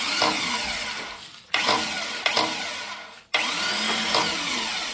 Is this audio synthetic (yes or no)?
no